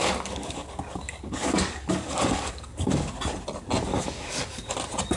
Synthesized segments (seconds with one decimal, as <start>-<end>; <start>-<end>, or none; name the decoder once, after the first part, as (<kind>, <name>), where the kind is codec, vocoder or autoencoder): 0.0-3.1 (codec, DAC); 3.9-4.7